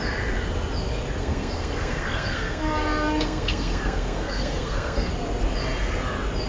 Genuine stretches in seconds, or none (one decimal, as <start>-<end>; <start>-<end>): 0.0-1.2; 5.1-6.5